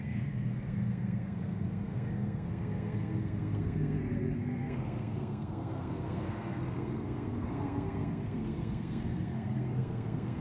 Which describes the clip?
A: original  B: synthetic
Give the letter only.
B